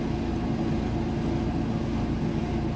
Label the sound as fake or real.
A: real